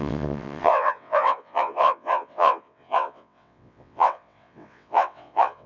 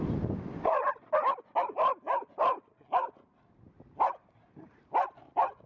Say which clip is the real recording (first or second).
second